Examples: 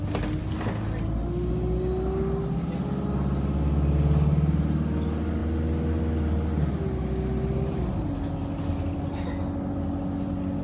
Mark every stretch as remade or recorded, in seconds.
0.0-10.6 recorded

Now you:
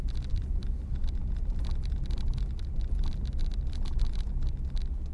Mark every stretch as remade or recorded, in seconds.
0.0-5.1 recorded

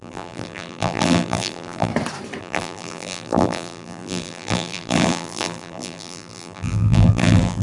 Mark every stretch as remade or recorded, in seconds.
0.0-1.9 remade; 1.9-2.4 recorded; 2.4-7.6 remade

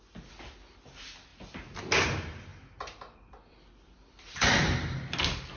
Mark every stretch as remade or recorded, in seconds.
0.0-2.5 recorded; 2.5-5.0 remade; 5.0-5.6 recorded